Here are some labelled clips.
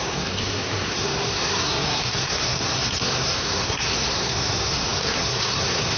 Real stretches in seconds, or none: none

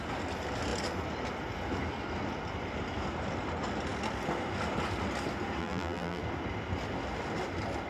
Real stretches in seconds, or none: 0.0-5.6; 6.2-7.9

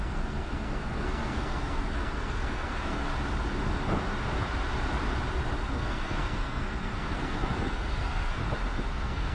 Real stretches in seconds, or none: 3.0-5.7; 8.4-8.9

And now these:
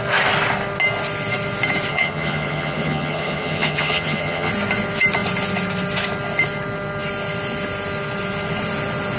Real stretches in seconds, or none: 0.0-1.9; 4.5-9.2

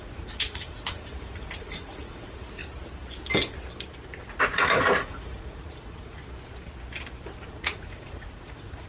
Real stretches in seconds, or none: 2.6-4.2; 6.2-7.5